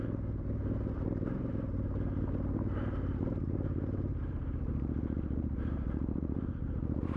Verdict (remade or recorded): remade